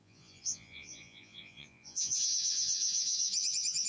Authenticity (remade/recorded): remade